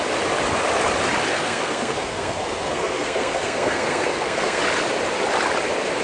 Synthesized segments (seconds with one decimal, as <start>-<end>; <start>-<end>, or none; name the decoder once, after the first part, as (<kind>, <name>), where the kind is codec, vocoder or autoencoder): 1.3-4.6 (codec, SNAC)

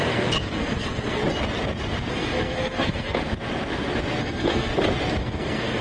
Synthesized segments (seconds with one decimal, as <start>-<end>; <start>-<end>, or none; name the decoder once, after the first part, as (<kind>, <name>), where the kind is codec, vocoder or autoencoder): 0.0-1.2 (codec, SNAC); 2.1-3.2; 4.2-4.7; 5.2-5.8

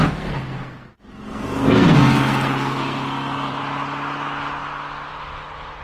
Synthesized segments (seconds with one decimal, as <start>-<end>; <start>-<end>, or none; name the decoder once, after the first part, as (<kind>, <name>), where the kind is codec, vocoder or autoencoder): 0.0-3.5 (codec, SNAC)

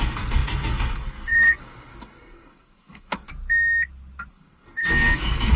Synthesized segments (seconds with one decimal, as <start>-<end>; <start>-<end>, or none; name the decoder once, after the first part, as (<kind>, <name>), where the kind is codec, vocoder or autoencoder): 0.0-3.3 (codec, SNAC); 4.3-5.6

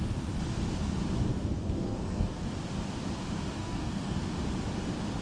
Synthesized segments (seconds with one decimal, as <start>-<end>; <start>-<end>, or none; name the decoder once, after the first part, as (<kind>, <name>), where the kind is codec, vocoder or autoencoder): 1.3-2.4 (codec, SNAC); 3.6-4.2